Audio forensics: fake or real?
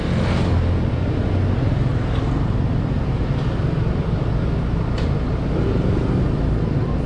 real